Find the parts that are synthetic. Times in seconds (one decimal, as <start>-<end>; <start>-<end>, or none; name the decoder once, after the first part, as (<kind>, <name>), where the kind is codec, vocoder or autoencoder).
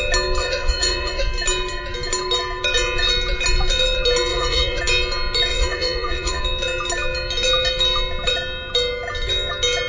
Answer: 0.4-1.2 (vocoder, Vocos); 4.3-4.8; 5.5-6.4